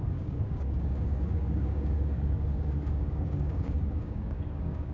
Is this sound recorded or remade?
remade